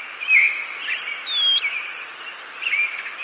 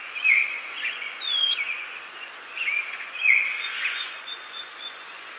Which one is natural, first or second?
first